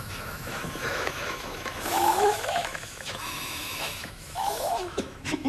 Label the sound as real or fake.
fake